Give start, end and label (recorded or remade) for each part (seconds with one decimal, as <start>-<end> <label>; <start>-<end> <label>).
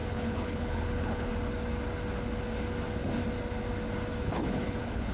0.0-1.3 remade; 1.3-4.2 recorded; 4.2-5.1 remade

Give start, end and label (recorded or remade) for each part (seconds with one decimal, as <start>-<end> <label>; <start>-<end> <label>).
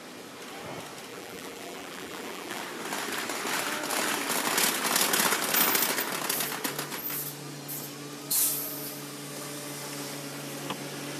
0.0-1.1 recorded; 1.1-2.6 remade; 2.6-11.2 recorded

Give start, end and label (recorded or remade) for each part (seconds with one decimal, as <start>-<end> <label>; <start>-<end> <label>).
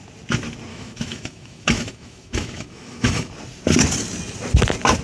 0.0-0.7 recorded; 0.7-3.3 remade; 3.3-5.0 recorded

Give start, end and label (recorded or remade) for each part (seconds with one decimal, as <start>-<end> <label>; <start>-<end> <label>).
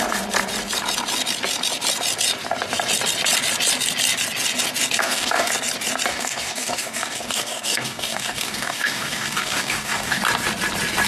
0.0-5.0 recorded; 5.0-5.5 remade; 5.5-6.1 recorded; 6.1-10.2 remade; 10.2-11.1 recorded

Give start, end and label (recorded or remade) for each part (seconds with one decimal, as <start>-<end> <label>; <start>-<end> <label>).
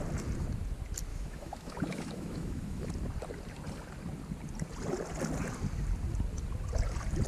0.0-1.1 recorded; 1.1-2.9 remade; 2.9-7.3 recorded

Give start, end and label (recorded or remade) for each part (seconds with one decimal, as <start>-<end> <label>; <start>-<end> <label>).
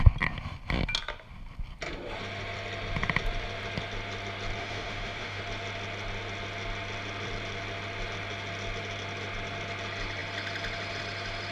0.0-4.6 recorded; 4.6-5.4 remade; 5.4-11.5 recorded